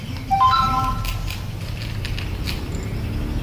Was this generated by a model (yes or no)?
no